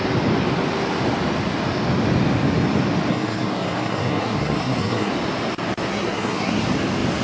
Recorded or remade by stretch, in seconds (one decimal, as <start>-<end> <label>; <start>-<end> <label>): 0.0-3.1 recorded; 3.1-5.1 remade; 5.1-5.9 recorded; 5.9-6.6 remade; 6.6-7.2 recorded